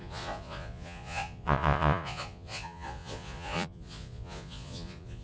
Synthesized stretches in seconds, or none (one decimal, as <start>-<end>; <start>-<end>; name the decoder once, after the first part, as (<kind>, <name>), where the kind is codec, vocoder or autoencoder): 0.0-5.2 (vocoder, Vocos)

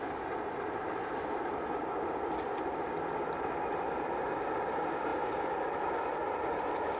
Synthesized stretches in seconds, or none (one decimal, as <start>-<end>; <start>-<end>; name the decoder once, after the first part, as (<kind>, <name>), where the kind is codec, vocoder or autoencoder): none